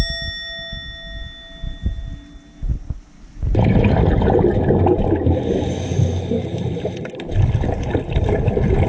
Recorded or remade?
recorded